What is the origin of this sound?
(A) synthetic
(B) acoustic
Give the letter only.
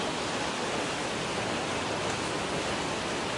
B